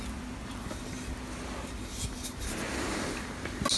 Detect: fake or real real